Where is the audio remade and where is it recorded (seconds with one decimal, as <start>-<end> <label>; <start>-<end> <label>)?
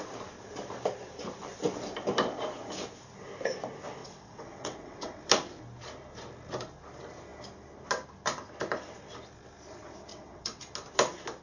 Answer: 0.0-4.0 recorded; 4.0-5.2 remade; 5.2-10.1 recorded; 10.1-10.6 remade; 10.6-11.4 recorded